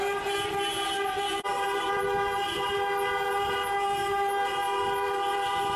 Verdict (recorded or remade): recorded